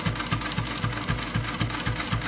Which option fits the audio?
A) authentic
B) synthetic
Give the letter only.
A